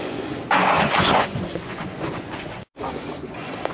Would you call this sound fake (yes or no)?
yes